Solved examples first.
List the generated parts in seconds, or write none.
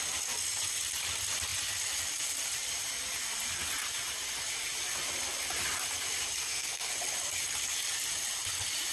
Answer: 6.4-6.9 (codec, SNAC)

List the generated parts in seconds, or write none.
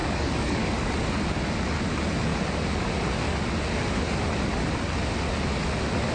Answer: 0.0-0.9 (codec, DAC)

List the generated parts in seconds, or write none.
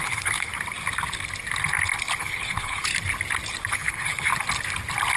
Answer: 0.0-0.5 (codec, HILCodec); 2.2-2.9; 3.7-4.3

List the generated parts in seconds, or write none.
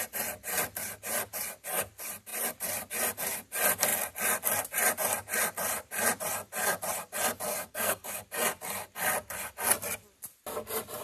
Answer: 7.5-8.2 (codec, SNAC)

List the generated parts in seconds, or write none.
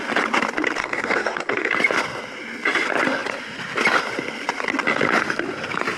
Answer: 0.8-1.7 (codec, SNAC)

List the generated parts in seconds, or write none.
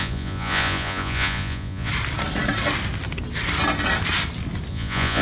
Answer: 0.0-1.9 (vocoder, Vocos); 4.7-5.2